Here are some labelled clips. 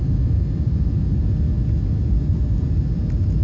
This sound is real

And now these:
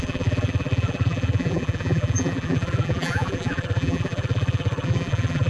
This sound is fake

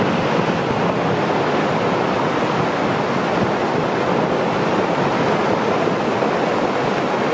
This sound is real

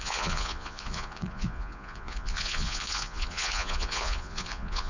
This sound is fake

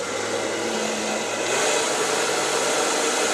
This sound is real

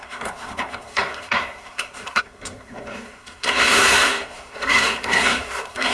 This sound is fake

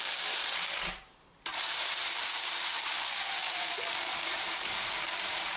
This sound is fake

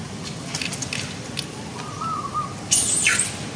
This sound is real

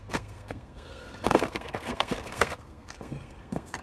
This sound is fake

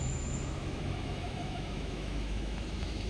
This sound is fake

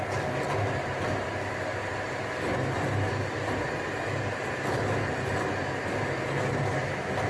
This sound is real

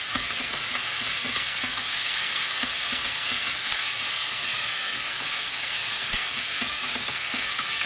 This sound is fake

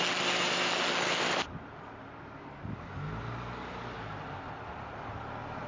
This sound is real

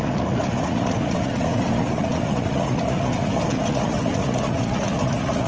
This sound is fake